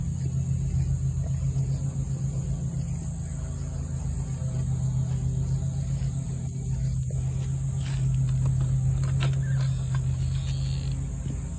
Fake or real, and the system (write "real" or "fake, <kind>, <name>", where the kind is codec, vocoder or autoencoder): real